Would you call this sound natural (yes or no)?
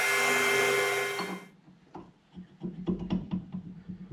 yes